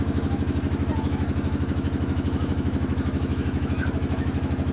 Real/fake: fake